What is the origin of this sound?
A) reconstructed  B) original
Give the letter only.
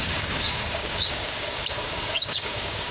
A